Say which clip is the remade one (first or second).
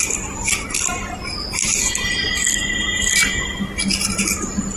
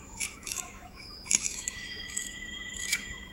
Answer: second